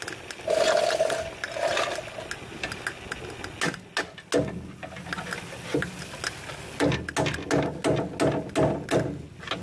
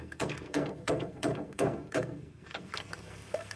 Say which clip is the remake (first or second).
second